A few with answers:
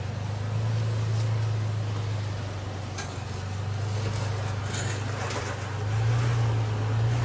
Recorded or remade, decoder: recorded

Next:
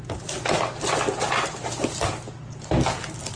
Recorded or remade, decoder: recorded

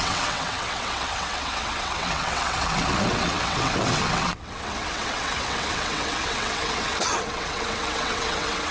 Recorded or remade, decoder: remade, vocoder, WaveNeXt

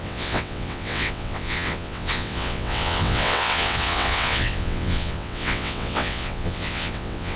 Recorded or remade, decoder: remade, vocoder, WaveNeXt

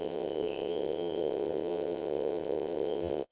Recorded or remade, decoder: remade, vocoder, WaveNeXt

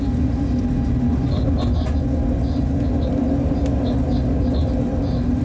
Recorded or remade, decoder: recorded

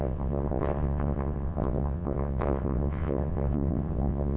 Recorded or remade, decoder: remade, vocoder, WaveNeXt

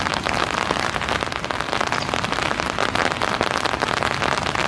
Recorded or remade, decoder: recorded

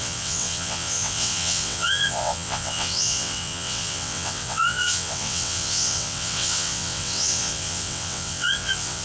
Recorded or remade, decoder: remade, vocoder, WaveNeXt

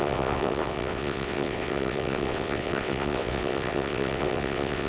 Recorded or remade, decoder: remade, vocoder, WaveNeXt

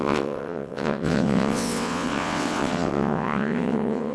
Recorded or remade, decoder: remade, vocoder, WaveNeXt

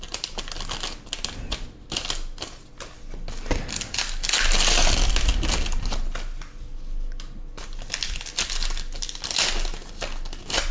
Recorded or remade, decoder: recorded